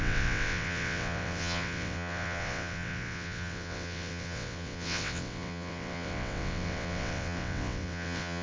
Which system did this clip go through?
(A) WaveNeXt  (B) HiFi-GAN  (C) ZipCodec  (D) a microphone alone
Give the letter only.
A